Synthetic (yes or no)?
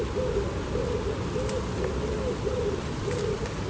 no